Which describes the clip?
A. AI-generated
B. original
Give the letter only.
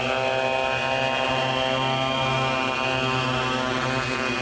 B